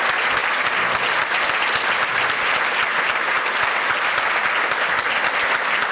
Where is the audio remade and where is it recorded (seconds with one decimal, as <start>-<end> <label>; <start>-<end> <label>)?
0.0-5.9 recorded